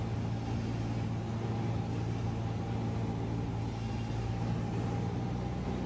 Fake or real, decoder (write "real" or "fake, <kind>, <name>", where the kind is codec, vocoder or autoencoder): real